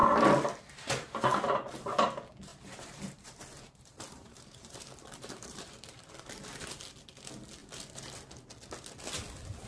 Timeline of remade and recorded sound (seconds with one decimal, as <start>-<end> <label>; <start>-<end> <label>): 0.0-2.5 recorded; 2.5-6.1 remade; 6.1-9.7 recorded